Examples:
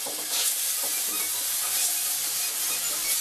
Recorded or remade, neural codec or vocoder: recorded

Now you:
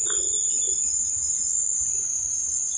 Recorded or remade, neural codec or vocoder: remade, vocoder, BigVGAN v2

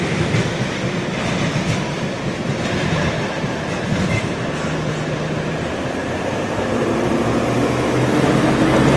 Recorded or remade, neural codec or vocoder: recorded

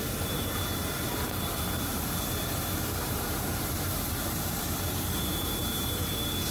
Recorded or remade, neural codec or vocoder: remade, vocoder, BigVGAN v2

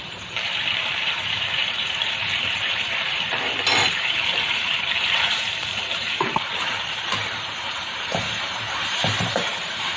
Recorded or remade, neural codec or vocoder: remade, vocoder, BigVGAN v2